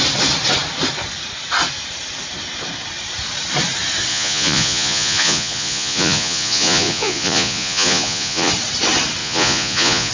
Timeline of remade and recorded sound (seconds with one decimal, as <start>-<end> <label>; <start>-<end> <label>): 0.0-4.1 recorded; 4.1-8.5 remade; 8.5-9.2 recorded; 9.2-10.1 remade